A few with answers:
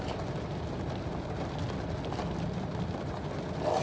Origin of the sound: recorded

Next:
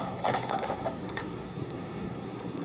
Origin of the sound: remade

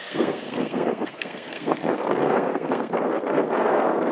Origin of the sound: remade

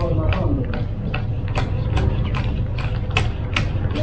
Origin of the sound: recorded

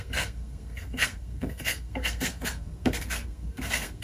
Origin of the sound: remade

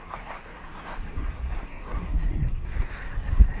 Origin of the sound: remade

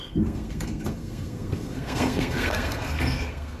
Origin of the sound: remade